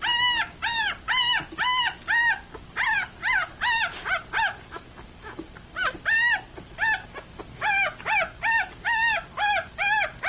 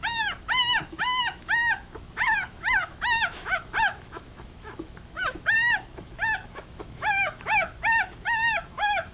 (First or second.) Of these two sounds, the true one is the first